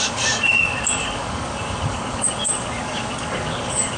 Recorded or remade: remade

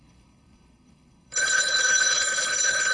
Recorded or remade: remade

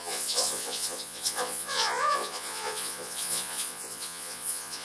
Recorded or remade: remade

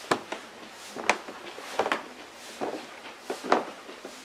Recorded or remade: recorded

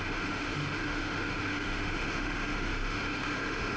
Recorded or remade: remade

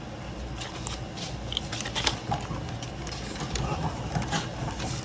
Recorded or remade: recorded